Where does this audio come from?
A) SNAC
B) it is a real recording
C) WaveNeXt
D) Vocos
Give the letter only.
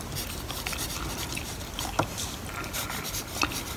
B